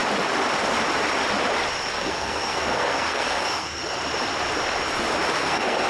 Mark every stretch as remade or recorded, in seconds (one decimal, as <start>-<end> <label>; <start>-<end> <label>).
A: 0.0-1.9 recorded; 1.9-3.8 remade; 3.8-5.4 recorded; 5.4-5.9 remade